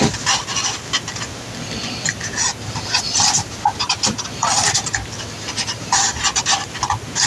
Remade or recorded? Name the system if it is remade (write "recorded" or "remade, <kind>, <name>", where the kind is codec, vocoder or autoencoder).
recorded